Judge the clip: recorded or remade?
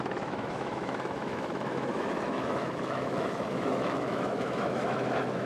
remade